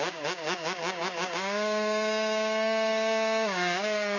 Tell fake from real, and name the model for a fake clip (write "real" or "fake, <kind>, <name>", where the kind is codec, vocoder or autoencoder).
fake, codec, DAC